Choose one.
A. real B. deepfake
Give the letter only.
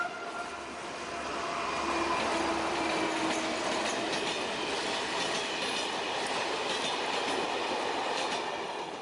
A